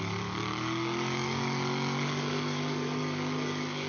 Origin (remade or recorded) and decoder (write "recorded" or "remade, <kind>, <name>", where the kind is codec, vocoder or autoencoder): remade, codec, DAC